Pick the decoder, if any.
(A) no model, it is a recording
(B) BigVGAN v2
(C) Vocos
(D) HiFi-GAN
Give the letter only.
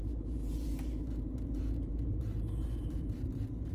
B